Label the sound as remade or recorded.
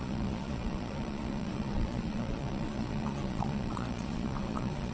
remade